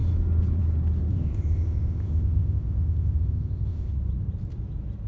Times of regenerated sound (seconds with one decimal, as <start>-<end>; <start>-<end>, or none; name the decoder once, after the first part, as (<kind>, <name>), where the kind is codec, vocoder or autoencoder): 1.1-3.9 (codec, ZipCodec)